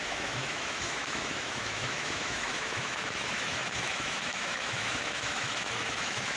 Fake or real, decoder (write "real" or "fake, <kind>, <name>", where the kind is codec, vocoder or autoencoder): fake, autoencoder, DAC-VAE